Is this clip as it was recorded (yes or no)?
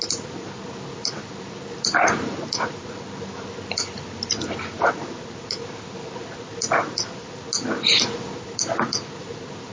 yes